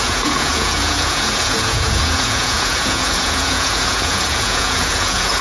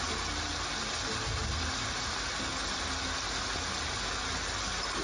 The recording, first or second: second